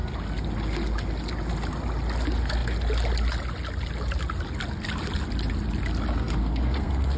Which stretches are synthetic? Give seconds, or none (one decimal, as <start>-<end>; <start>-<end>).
6.1-7.2